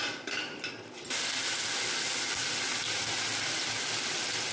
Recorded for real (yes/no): yes